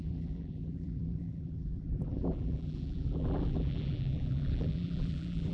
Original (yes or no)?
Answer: no